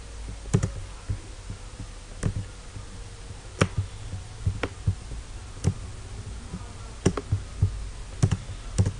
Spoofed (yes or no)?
no